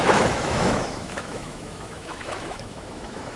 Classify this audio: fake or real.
fake